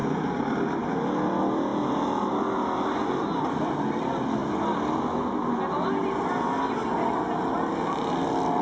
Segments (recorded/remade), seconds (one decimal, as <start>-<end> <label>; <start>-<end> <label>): 0.0-8.6 recorded